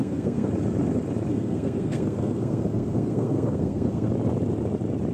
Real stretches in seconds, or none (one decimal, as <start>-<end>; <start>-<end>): 0.5-1.3; 4.1-5.1